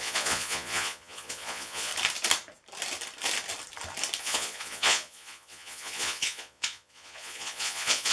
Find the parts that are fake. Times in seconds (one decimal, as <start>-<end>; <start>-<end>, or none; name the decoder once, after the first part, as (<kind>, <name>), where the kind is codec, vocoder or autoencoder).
0.0-1.9 (vocoder, Vocos); 4.2-8.1